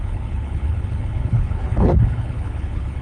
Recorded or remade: remade